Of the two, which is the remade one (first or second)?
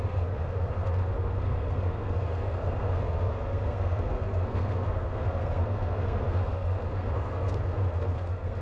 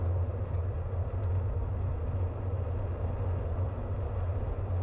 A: first